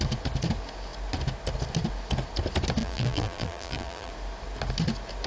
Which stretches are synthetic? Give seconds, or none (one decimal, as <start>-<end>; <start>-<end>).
2.8-4.1

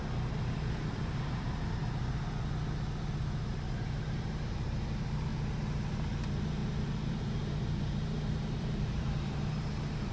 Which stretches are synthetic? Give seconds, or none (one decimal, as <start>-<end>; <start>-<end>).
0.9-1.8; 3.2-5.3; 5.9-10.1

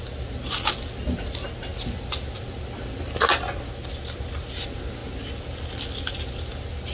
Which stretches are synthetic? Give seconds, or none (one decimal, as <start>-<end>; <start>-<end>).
none

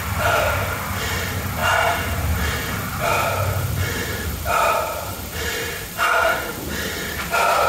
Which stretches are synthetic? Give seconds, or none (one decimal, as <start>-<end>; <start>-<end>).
1.6-2.5; 2.9-6.6